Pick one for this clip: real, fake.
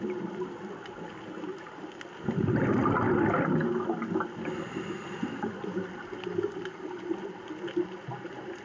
real